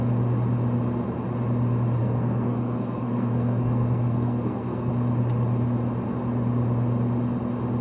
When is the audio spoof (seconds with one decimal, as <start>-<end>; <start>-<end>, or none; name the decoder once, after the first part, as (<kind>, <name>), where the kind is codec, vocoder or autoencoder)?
2.0-4.9 (codec, SNAC)